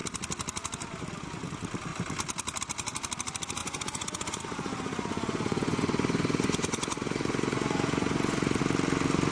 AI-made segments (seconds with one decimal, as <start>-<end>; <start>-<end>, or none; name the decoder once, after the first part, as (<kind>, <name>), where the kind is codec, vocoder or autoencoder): 3.6-8.6 (vocoder, Vocos)